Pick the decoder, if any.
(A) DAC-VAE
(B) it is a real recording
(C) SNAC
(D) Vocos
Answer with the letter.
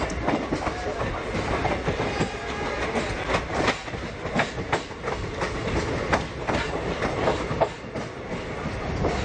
B